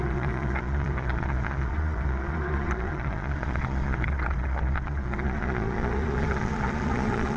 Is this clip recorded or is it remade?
remade